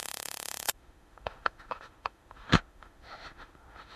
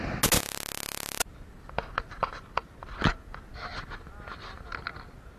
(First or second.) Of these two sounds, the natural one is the second